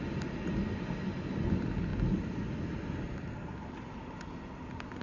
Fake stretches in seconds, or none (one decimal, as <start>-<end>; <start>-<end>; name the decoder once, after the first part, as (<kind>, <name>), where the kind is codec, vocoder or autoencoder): none

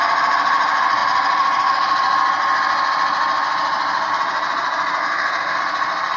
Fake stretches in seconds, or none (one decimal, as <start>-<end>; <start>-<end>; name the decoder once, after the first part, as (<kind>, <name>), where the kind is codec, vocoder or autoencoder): 5.0-5.6 (codec, SNAC)